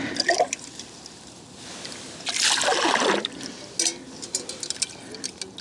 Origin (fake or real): real